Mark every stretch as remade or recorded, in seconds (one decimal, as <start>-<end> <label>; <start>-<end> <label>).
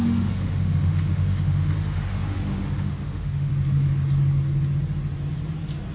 0.0-3.5 remade; 3.5-5.9 recorded